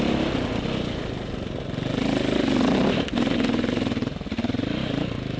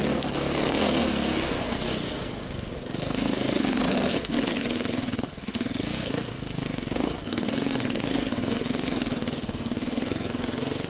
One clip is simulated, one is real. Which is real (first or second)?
first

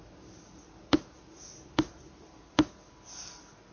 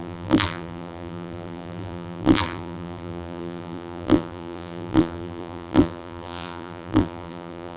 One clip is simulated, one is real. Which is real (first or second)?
first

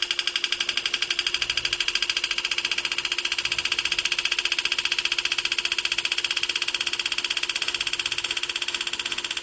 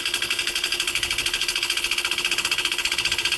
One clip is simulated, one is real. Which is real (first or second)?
first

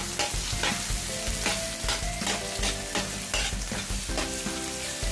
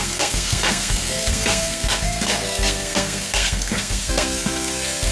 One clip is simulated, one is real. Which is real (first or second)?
first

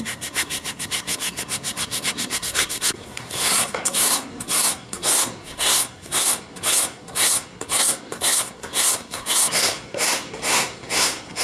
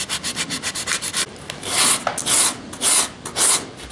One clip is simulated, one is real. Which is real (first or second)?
second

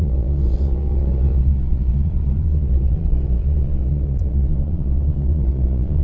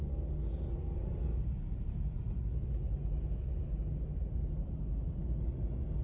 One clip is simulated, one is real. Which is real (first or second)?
second